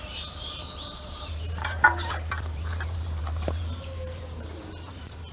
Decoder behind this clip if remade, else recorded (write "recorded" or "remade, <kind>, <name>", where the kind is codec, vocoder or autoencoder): remade, vocoder, BigVGAN v2